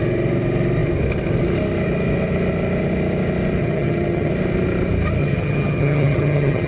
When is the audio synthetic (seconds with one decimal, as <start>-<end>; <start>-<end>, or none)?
3.6-4.3; 5.2-6.7